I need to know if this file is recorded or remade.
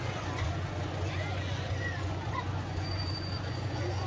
remade